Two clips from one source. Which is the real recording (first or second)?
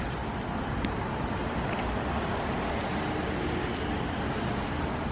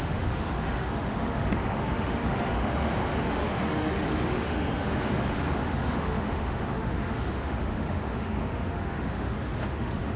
first